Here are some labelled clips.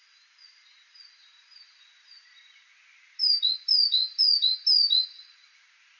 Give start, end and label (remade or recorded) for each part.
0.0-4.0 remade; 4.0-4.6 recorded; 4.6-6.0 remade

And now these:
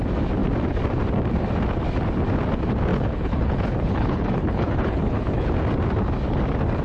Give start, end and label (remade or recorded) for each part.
0.0-2.9 recorded; 2.9-5.5 remade; 5.5-6.8 recorded

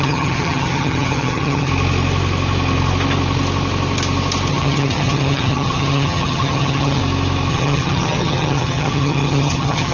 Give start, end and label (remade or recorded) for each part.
0.0-1.7 remade; 1.7-4.5 recorded; 4.5-7.0 remade; 7.0-7.5 recorded; 7.5-9.9 remade